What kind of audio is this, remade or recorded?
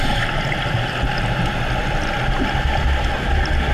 recorded